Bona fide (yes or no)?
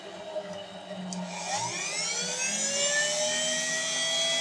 yes